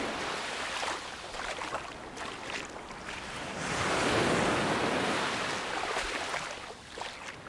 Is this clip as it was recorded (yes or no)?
yes